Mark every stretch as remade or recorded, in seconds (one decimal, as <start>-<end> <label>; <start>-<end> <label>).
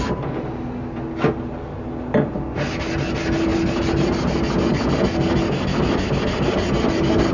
0.0-7.3 recorded